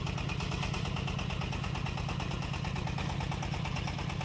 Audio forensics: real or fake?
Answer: real